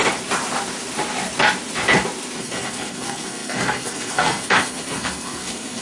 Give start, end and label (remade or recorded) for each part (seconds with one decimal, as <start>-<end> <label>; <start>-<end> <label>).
0.0-2.4 recorded; 2.4-5.8 remade